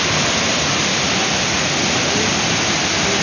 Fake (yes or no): no